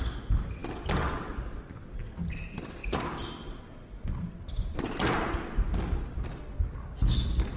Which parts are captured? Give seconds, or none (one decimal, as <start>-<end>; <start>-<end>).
0.0-7.6